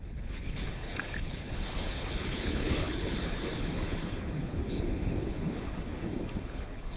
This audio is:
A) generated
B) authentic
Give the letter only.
A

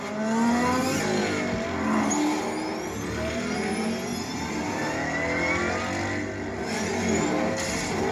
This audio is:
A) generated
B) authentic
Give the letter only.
B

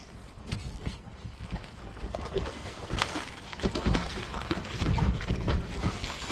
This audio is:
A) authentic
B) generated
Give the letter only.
B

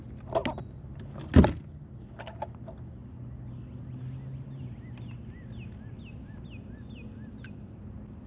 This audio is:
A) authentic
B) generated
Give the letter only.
A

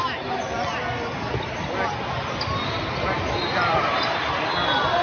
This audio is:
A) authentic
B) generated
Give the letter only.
A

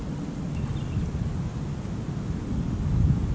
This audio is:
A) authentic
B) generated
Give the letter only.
A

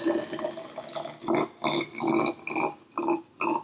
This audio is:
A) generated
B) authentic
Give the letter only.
B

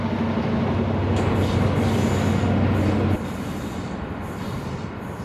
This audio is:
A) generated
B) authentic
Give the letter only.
B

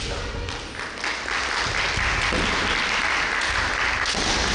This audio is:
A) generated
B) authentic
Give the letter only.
B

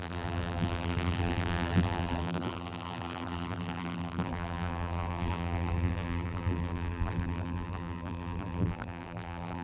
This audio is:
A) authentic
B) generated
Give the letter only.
B